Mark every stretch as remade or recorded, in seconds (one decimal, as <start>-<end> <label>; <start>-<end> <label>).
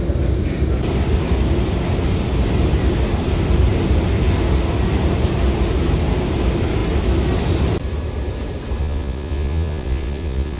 0.0-8.8 recorded; 8.8-10.6 remade